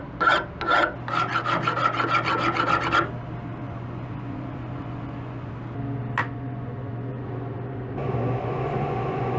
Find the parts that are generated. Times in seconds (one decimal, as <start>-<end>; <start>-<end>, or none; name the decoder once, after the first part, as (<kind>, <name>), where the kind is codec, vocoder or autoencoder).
3.6-5.5 (vocoder, Vocos); 6.2-9.4